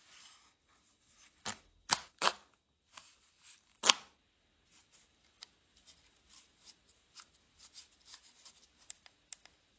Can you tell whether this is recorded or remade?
recorded